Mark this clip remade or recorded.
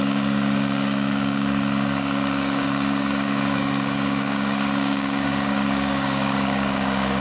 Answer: remade